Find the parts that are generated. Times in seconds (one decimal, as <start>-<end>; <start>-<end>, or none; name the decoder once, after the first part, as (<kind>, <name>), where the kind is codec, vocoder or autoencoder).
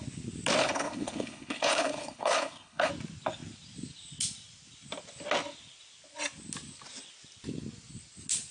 0.6-2.9 (codec, HILCodec)